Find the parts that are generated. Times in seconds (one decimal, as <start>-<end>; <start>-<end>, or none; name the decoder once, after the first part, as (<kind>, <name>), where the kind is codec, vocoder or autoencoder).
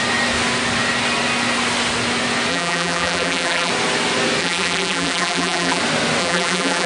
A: 2.5-3.7 (vocoder, BigVGAN v2); 4.4-5.8; 6.2-6.9